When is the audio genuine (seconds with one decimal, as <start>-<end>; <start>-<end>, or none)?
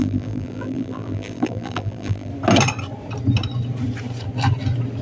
2.3-5.0